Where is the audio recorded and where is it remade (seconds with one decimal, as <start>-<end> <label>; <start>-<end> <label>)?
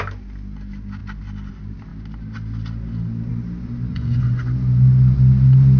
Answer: 0.0-3.9 recorded; 3.9-4.4 remade; 4.4-5.8 recorded